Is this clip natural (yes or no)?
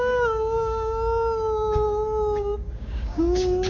no